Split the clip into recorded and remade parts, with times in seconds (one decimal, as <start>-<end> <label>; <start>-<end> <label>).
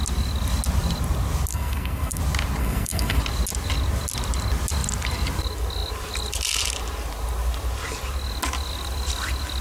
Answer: 0.0-1.5 recorded; 1.5-2.2 remade; 2.2-2.6 recorded; 2.6-3.2 remade; 3.2-9.6 recorded